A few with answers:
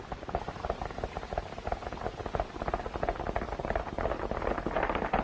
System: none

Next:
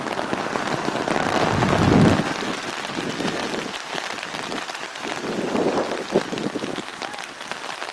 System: none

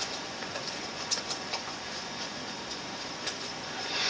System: vocoder, Vocos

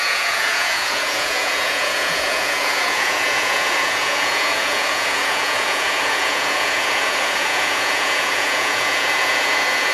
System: vocoder, Vocos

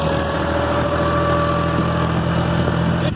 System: none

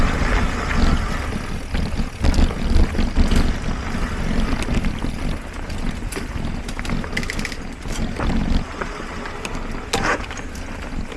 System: none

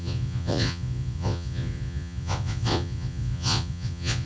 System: vocoder, Vocos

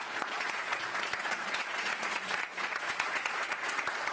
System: vocoder, Vocos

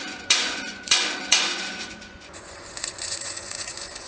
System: vocoder, Vocos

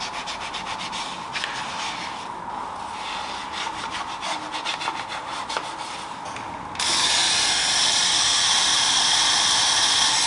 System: none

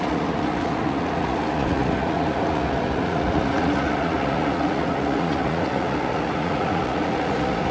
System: vocoder, Vocos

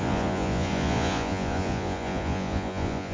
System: vocoder, Vocos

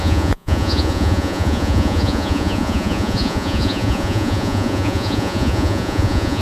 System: vocoder, Vocos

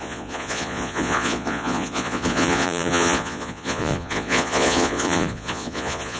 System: vocoder, Vocos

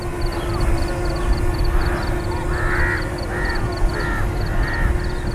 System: none